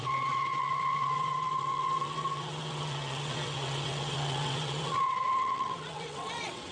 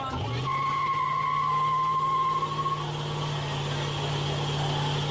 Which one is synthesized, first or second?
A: first